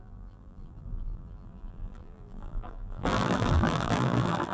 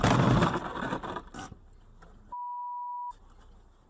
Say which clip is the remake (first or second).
first